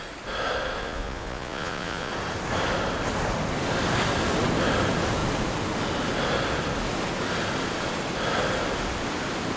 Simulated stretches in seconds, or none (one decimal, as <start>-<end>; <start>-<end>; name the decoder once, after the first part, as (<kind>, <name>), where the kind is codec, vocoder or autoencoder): 0.8-2.1 (vocoder, Vocos)